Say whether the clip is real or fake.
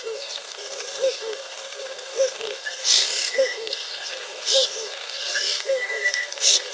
fake